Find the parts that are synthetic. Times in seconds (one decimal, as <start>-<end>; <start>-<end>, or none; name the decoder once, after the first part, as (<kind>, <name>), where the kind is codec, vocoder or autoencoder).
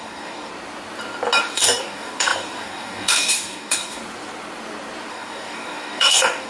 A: 0.0-0.5 (codec, DAC); 1.4-4.0; 5.1-6.5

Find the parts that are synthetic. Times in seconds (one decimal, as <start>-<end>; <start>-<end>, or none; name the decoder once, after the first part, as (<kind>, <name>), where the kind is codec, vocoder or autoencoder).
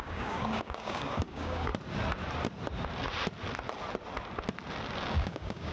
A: 0.0-1.7 (codec, DAC); 5.1-5.7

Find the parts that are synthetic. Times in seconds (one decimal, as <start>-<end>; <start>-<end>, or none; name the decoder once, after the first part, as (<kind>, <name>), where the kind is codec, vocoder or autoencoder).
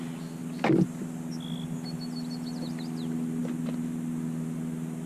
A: none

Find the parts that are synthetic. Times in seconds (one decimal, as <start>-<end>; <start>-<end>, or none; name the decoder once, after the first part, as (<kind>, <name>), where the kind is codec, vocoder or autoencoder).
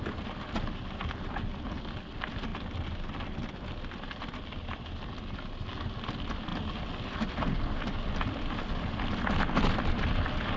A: none